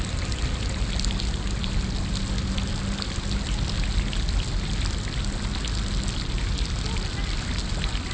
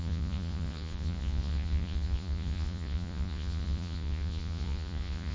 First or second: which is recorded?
first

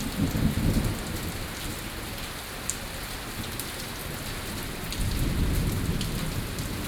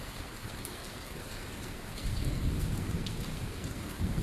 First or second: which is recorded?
first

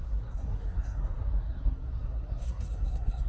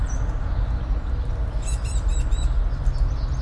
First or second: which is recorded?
second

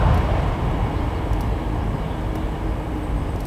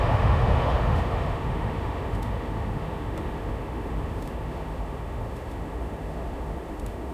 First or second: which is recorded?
first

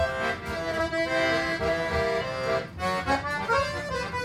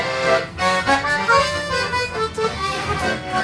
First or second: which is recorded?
first